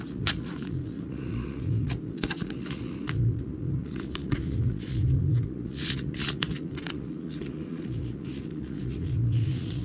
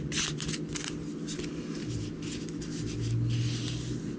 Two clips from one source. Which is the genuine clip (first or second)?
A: second